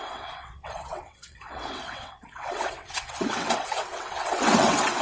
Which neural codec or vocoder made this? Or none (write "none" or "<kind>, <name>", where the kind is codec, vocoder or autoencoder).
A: vocoder, WaveNeXt